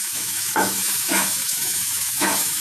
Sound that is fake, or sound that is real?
fake